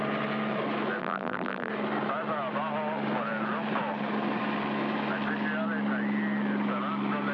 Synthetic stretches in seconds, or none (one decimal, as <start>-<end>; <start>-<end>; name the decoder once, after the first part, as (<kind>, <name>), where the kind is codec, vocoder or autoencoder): 1.0-1.7 (vocoder, BigVGAN v2)

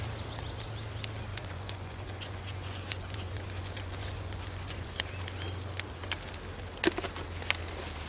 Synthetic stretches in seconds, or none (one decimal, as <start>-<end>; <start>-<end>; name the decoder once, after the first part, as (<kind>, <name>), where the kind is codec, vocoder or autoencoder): 1.3-5.0 (vocoder, Vocos)

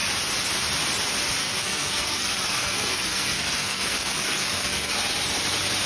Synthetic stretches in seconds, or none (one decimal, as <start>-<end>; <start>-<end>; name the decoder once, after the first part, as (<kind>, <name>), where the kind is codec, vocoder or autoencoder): 1.4-4.9 (codec, SNAC)

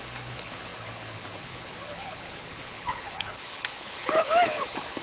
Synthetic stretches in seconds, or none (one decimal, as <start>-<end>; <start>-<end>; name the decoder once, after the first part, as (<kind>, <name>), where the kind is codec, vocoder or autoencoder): 0.0-5.0 (codec, HILCodec)

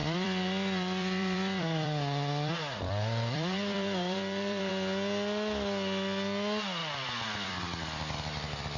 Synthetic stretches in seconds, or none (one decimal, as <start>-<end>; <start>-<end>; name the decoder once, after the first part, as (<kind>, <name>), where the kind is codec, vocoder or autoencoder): 0.0-4.7 (vocoder, BigVGAN v2); 6.8-7.6